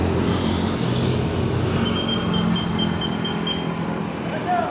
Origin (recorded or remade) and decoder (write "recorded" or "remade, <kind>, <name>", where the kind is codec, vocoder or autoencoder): recorded